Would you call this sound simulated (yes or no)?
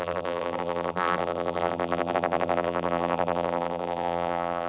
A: yes